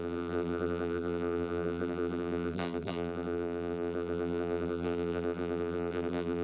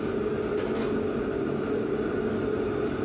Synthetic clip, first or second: first